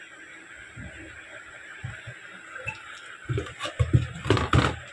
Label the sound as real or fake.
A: real